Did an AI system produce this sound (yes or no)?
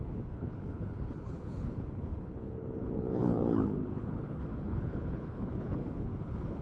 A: yes